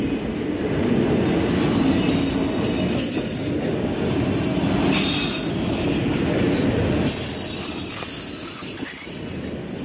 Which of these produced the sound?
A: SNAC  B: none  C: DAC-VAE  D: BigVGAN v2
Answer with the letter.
B